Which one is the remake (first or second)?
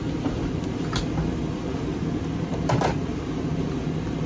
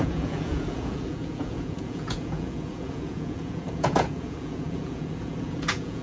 second